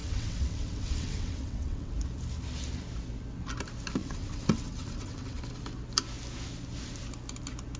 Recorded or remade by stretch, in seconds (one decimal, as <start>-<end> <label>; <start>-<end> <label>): 0.0-1.9 remade; 1.9-4.0 recorded; 4.0-5.4 remade; 5.4-7.8 recorded